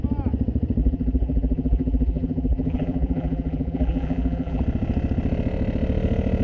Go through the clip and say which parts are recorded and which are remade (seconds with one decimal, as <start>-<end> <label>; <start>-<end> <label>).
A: 0.0-0.8 recorded; 0.8-4.6 remade; 4.6-6.4 recorded